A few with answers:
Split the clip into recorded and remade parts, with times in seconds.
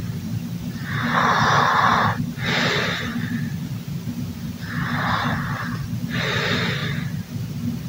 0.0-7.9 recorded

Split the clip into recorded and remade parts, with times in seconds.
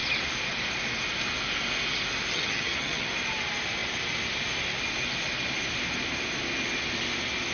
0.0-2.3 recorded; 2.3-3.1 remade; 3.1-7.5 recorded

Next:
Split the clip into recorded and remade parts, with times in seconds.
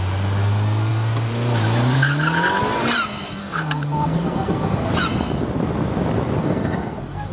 0.0-3.4 recorded; 3.4-4.9 remade; 4.9-6.4 recorded; 6.4-7.3 remade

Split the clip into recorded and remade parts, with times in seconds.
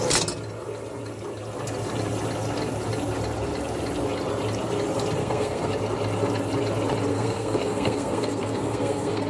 0.0-5.2 recorded; 5.2-5.7 remade; 5.7-7.1 recorded; 7.1-9.3 remade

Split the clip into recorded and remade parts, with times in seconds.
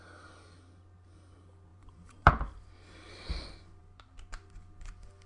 0.0-1.7 recorded; 1.7-2.3 remade; 2.3-3.8 recorded; 3.8-4.3 remade; 4.3-5.3 recorded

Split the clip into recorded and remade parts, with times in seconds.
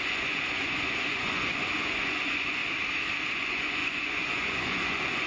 0.0-2.6 remade; 2.6-3.3 recorded; 3.3-5.3 remade